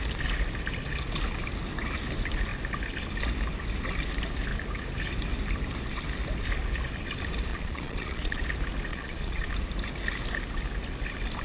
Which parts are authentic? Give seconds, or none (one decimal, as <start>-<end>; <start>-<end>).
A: 0.0-7.5; 8.4-8.9; 9.5-11.4